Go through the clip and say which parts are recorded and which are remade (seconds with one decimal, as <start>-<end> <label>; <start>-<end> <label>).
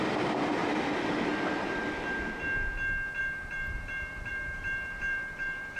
0.0-0.6 remade; 0.6-3.2 recorded; 3.2-5.8 remade